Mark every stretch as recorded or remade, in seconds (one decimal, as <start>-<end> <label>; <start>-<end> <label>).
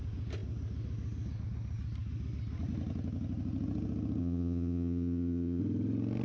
0.0-4.2 recorded; 4.2-5.6 remade; 5.6-6.2 recorded